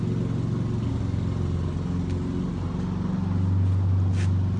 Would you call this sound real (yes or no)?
yes